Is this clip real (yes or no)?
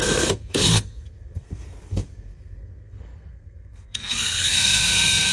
no